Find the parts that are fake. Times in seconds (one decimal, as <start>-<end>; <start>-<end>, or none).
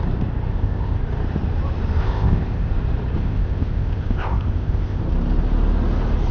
0.5-1.0; 2.0-2.7; 3.2-5.0